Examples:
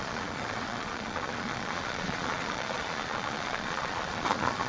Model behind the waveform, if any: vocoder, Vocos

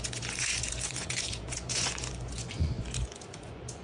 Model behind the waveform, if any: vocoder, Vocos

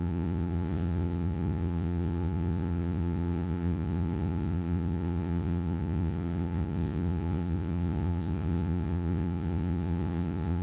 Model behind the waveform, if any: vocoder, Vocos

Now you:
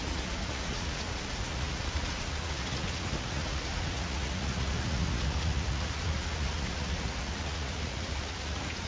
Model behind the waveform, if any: vocoder, Vocos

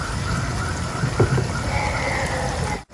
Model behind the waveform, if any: none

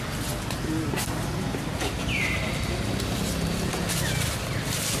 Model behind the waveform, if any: none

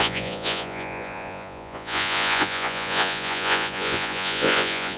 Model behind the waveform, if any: vocoder, Vocos